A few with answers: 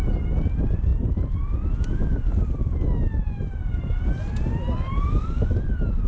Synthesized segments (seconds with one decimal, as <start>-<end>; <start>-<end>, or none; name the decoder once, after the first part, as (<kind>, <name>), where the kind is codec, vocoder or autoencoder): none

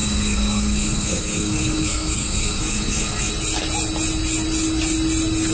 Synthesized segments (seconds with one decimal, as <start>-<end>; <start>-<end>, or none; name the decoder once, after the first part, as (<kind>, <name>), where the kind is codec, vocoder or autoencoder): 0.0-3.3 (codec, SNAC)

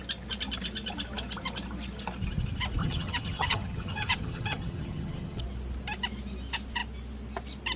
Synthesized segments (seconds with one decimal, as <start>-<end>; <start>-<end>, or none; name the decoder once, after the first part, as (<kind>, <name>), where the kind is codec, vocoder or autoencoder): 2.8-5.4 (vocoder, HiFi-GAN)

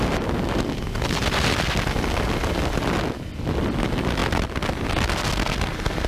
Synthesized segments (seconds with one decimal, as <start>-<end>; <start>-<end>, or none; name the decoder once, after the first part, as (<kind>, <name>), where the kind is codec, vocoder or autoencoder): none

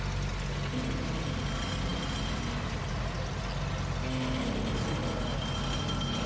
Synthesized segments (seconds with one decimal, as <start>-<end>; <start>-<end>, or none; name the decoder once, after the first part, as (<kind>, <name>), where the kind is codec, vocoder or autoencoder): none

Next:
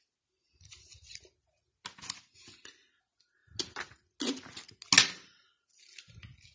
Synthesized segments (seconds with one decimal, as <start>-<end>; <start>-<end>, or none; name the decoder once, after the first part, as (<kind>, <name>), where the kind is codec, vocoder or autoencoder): none

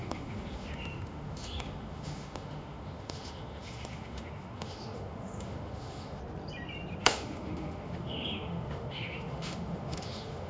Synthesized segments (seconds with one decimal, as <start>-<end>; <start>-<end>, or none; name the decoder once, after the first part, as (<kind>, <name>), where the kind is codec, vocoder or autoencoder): 0.0-6.2 (autoencoder, DAC-VAE); 7.0-10.5

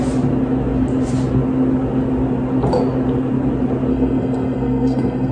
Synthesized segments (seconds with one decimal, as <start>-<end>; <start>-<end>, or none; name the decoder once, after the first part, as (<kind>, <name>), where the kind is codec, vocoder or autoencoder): 3.9-5.3 (codec, SNAC)